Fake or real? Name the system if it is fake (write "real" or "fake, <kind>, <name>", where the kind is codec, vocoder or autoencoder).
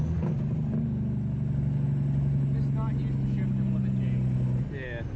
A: real